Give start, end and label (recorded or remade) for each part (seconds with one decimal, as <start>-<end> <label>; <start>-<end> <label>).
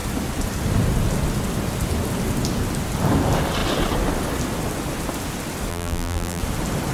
0.0-5.7 recorded; 5.7-6.4 remade; 6.4-6.9 recorded